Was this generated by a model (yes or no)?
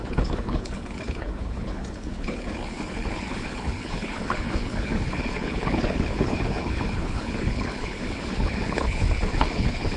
yes